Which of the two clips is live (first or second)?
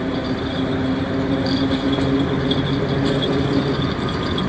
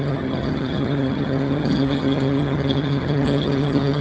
first